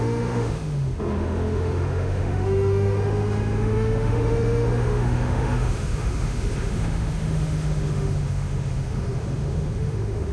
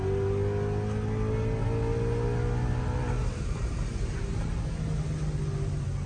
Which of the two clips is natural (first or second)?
second